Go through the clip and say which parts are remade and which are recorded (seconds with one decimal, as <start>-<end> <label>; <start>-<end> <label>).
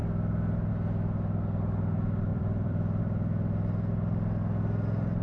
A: 0.0-2.3 recorded; 2.3-3.0 remade; 3.0-5.2 recorded